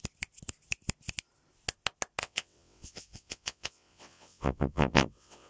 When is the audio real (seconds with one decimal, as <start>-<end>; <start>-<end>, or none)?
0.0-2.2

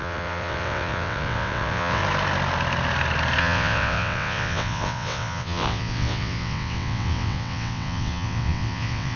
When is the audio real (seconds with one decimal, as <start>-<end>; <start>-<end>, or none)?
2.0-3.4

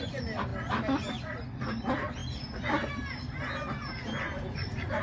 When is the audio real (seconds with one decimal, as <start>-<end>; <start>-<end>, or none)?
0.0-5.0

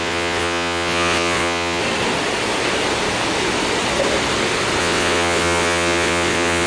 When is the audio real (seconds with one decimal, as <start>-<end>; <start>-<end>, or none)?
1.8-4.8